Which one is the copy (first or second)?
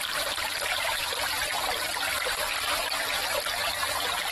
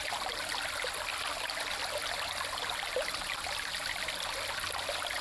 first